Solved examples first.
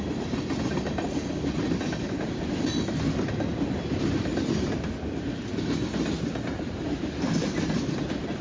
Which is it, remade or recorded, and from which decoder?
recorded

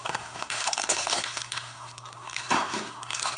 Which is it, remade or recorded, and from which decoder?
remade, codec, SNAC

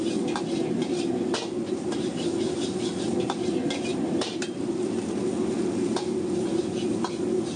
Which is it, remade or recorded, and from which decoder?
recorded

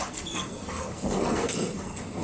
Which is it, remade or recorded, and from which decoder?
remade, codec, SNAC